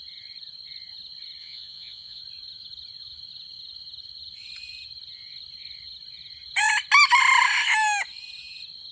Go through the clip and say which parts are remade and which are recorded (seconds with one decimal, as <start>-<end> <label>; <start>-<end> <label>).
0.0-1.4 recorded; 1.4-2.2 remade; 2.2-8.9 recorded